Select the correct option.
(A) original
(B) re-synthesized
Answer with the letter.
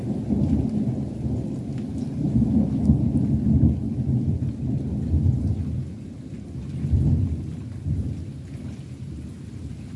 A